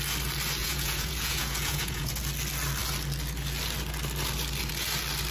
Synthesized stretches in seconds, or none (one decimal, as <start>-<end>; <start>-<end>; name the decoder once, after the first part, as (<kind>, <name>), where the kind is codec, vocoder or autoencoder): 0.6-2.1 (vocoder, Vocos)